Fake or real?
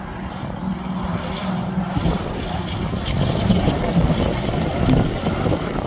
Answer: real